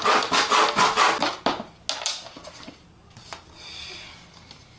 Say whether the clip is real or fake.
real